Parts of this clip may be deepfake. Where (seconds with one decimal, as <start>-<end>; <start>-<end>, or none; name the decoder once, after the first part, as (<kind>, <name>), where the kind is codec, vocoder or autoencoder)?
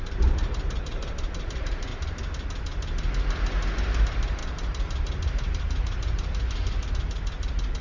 0.0-1.9 (vocoder, BigVGAN v2); 4.0-7.8